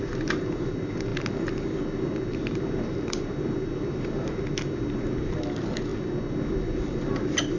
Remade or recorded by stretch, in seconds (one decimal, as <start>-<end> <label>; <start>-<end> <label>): 0.0-7.6 recorded